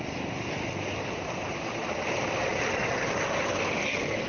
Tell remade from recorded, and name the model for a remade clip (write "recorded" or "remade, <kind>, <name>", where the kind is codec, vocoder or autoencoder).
recorded